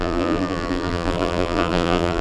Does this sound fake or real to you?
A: fake